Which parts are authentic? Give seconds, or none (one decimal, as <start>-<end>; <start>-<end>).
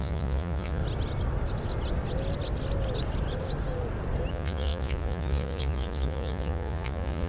0.8-4.3